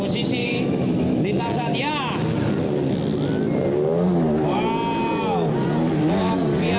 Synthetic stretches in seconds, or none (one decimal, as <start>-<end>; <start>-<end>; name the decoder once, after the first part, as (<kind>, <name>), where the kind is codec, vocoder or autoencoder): 0.4-1.4 (autoencoder, DAC-VAE)